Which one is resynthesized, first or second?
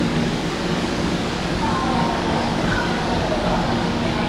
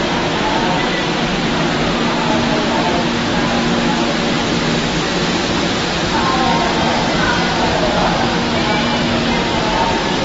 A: first